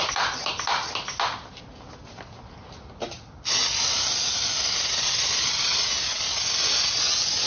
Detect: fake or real real